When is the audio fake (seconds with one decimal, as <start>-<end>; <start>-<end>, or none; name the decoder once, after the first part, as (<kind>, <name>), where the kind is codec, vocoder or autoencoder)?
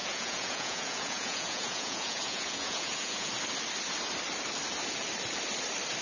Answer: 0.0-3.3 (vocoder, Vocos)